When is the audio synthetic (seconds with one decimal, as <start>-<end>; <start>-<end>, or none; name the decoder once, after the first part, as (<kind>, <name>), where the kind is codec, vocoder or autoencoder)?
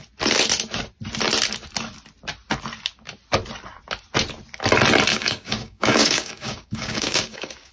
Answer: 5.1-7.7 (codec, DAC)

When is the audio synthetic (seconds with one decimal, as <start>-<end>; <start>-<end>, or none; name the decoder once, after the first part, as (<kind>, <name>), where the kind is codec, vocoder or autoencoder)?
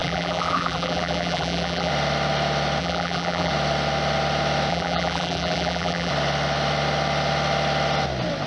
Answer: 0.0-1.9 (vocoder, BigVGAN v2); 2.8-3.5; 4.7-6.1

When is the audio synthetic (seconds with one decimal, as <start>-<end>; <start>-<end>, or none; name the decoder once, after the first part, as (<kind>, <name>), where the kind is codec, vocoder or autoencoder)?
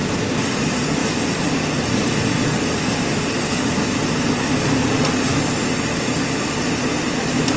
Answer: none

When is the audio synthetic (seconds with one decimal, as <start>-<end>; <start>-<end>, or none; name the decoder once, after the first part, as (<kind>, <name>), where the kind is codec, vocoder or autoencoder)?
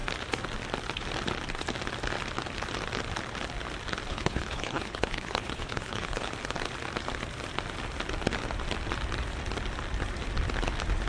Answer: 4.1-6.3 (codec, HILCodec)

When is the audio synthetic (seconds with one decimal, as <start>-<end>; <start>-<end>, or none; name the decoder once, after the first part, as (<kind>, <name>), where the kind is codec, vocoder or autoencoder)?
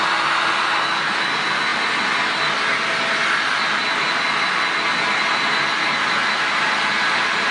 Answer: none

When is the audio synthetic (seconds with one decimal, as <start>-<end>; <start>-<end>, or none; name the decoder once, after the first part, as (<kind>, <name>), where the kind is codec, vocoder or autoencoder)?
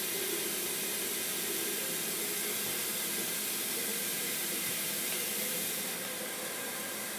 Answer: 3.9-4.9 (vocoder, BigVGAN v2)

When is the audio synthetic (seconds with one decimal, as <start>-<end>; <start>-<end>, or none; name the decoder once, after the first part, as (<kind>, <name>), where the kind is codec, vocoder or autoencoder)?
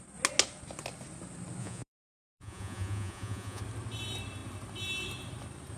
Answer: 1.6-3.6 (vocoder, Vocos)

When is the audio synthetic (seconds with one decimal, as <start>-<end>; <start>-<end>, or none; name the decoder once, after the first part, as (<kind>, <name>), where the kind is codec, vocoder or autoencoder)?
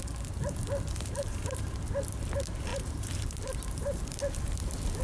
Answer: 1.2-1.8 (vocoder, BigVGAN v2); 2.7-4.0